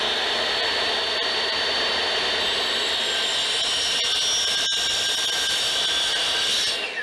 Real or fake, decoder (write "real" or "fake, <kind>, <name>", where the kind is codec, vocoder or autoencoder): real